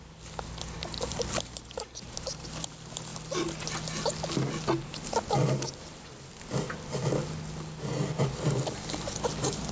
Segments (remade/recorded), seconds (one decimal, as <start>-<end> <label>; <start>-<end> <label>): 0.0-9.7 recorded